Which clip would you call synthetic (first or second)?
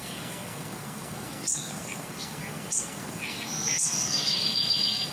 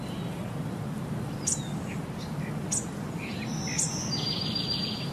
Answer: first